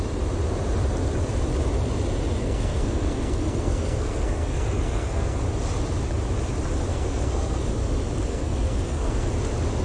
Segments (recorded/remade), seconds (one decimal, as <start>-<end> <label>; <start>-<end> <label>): 0.0-2.4 recorded; 2.4-5.4 remade; 5.4-6.9 recorded; 6.9-7.7 remade; 7.7-8.3 recorded; 8.3-9.3 remade; 9.3-9.8 recorded